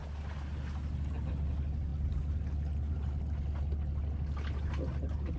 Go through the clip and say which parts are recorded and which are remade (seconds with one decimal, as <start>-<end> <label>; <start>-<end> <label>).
0.0-5.4 recorded